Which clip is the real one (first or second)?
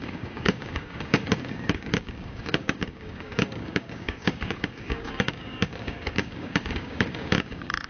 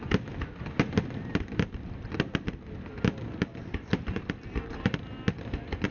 second